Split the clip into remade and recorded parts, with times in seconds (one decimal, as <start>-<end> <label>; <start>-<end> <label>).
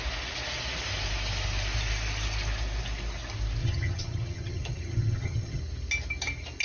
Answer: 0.0-3.6 recorded; 3.6-5.6 remade; 5.6-6.6 recorded